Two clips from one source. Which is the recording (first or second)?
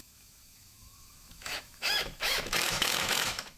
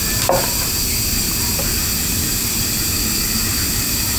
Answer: second